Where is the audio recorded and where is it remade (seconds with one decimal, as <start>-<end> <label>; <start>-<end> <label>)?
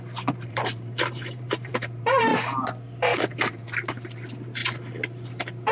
0.0-2.3 remade; 2.3-3.5 recorded; 3.5-4.6 remade; 4.6-5.7 recorded